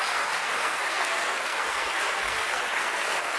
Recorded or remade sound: remade